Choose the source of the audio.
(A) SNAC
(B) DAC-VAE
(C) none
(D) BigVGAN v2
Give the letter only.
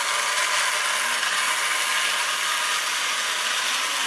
C